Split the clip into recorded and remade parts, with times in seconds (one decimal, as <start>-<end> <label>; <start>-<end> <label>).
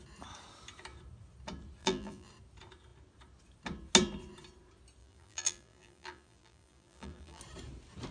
0.0-1.8 recorded; 1.8-2.3 remade; 2.3-5.0 recorded; 5.0-7.4 remade; 7.4-8.1 recorded